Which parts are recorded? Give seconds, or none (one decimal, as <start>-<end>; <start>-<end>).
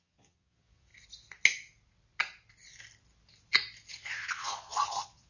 0.9-3.9